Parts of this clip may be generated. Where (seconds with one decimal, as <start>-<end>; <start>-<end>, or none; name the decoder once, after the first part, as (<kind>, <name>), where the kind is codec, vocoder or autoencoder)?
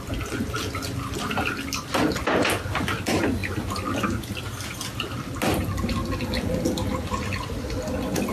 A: none